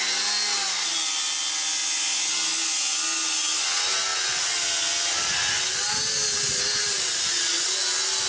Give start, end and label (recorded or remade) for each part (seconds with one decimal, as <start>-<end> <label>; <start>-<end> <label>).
0.0-8.3 recorded